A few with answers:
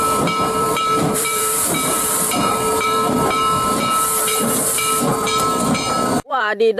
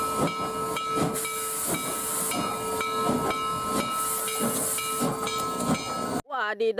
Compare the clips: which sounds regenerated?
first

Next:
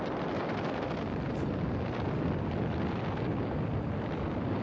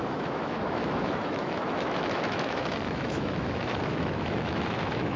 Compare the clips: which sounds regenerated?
second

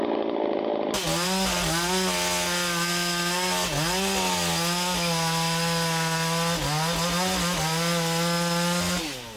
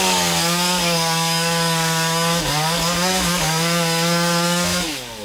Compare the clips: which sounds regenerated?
second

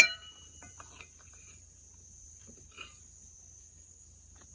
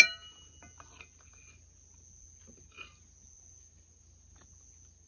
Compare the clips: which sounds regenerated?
first